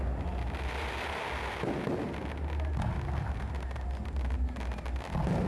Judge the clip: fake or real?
real